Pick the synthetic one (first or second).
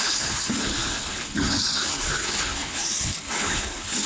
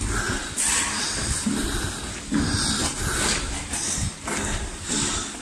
first